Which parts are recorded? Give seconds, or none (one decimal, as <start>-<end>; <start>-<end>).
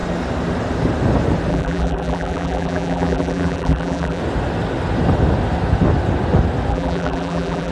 0.0-1.5; 4.2-6.7